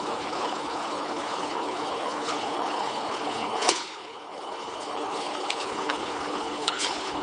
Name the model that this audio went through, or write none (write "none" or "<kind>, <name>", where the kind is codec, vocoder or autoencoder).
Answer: codec, HILCodec